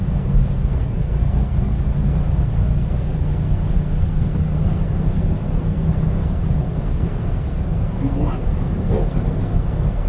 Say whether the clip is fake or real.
fake